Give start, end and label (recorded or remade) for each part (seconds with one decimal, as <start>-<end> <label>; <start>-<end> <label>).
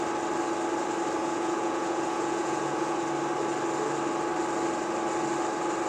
0.0-1.2 recorded; 1.2-3.0 remade; 3.0-5.9 recorded